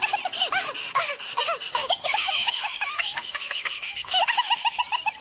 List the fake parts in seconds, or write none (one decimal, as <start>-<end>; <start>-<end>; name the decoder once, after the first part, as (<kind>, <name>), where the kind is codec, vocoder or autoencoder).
1.7-4.8 (autoencoder, DAC-VAE)